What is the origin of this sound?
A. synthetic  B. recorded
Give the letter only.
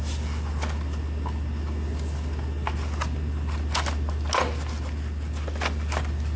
B